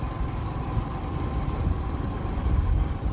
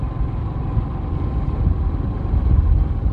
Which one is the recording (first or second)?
second